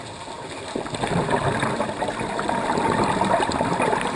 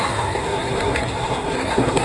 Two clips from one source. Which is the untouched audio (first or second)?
first